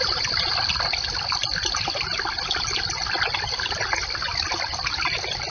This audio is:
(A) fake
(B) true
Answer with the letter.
B